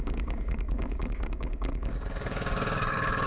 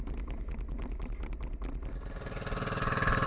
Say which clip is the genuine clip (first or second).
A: second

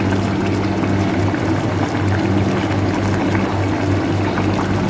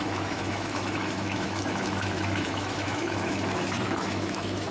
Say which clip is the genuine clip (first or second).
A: first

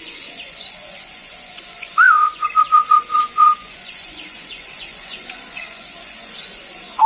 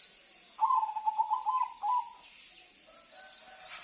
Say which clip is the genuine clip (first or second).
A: second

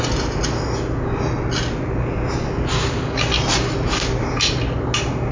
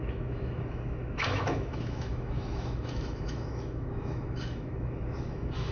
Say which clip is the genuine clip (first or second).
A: first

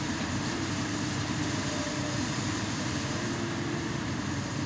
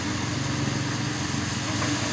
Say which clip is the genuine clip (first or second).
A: second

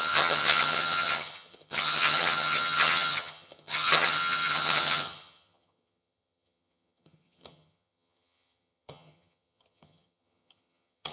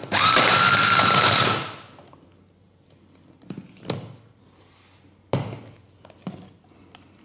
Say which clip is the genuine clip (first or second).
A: second